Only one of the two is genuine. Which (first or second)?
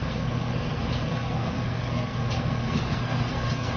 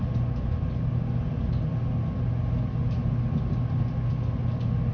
second